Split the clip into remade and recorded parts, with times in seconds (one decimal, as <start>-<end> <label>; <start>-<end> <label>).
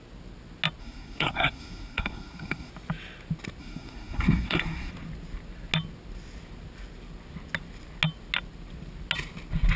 0.0-0.8 recorded; 0.8-2.7 remade; 2.7-3.6 recorded; 3.6-4.9 remade; 4.9-9.8 recorded